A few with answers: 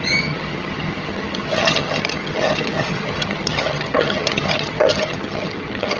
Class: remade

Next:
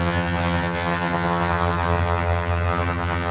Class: remade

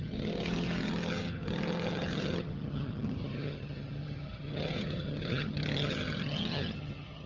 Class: remade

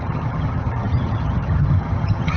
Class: remade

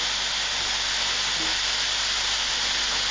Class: recorded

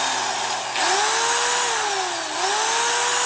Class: recorded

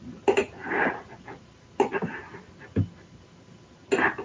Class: recorded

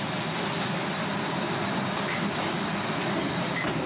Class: recorded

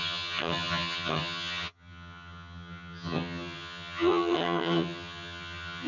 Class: remade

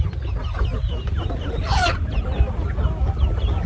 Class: recorded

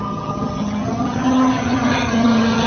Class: remade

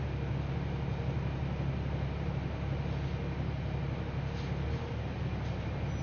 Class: recorded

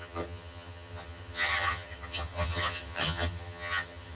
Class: remade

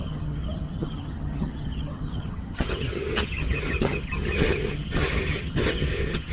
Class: remade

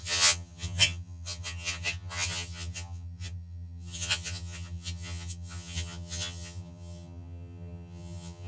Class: remade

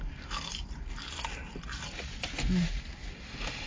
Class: recorded